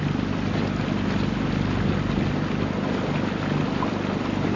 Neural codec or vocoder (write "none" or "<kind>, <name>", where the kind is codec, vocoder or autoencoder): none